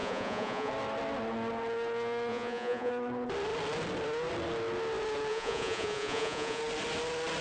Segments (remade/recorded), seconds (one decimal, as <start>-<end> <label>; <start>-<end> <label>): 0.0-0.7 remade; 0.7-2.3 recorded; 2.3-2.9 remade; 2.9-5.3 recorded; 5.3-6.6 remade; 6.6-7.4 recorded